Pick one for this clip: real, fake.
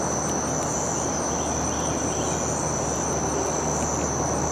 real